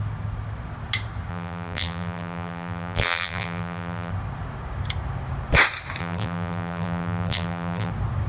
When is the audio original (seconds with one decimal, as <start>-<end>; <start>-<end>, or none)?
0.0-1.3; 4.1-6.0; 7.9-8.3